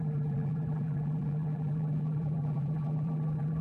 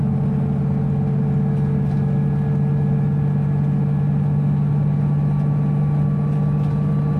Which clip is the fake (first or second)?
first